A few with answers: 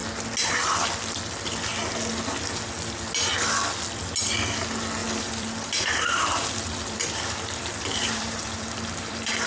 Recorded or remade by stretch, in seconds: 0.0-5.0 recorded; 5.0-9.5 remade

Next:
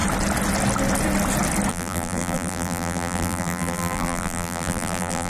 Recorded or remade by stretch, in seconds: 0.0-1.7 recorded; 1.7-5.3 remade

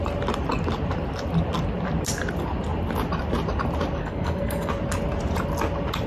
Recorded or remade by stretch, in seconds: 0.0-4.0 recorded; 4.0-4.7 remade; 4.7-6.1 recorded

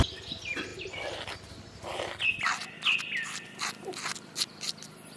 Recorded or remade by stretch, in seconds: 0.0-5.2 recorded

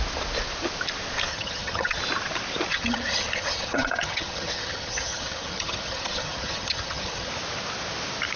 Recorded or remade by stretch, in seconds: 0.0-1.3 recorded; 1.3-2.0 remade; 2.0-2.7 recorded; 2.7-7.3 remade; 7.3-8.4 recorded

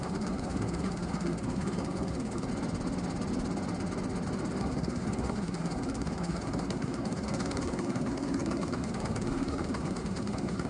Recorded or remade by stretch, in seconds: 0.0-2.5 remade; 2.5-4.6 recorded; 4.6-10.7 remade

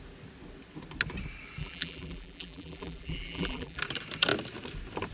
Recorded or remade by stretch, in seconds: 0.0-1.6 recorded; 1.6-3.8 remade; 3.8-5.1 recorded

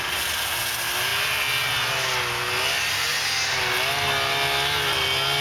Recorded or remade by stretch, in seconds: 0.0-5.4 recorded